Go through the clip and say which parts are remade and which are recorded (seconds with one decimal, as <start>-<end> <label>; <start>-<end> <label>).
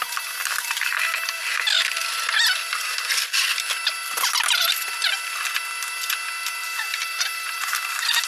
0.0-6.6 recorded; 6.6-8.3 remade